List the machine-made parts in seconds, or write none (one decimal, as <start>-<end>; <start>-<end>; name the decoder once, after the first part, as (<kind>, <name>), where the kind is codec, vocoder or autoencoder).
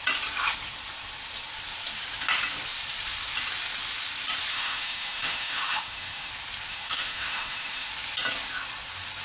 4.5-6.3 (autoencoder, DAC-VAE); 6.7-7.9